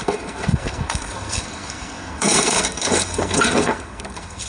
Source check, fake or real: fake